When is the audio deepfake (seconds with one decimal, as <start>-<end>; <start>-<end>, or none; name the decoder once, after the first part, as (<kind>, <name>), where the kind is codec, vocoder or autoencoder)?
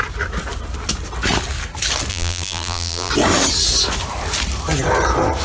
2.1-3.1 (vocoder, BigVGAN v2)